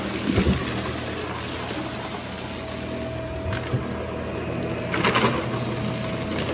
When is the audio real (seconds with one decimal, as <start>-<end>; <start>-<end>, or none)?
0.0-6.5